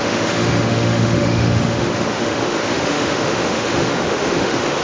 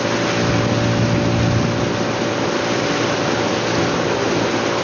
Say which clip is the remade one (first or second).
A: first